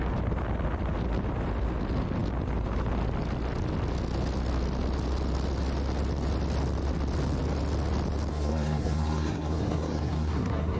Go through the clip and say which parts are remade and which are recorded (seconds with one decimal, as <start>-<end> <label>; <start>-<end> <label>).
0.0-8.3 recorded; 8.3-10.8 remade